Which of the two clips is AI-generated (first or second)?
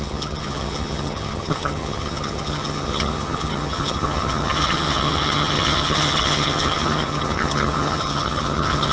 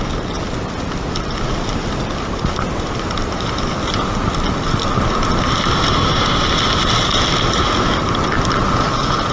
first